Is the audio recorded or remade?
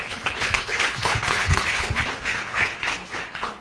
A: remade